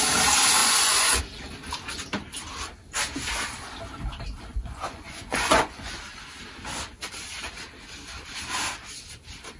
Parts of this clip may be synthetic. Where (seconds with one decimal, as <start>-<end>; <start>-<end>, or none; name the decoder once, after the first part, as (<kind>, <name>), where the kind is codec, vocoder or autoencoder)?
0.6-1.2 (vocoder, Vocos); 4.5-5.9